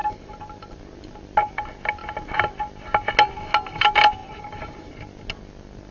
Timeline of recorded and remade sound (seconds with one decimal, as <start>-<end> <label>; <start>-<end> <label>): 0.0-0.8 remade; 0.8-4.2 recorded; 4.2-4.9 remade; 4.9-5.9 recorded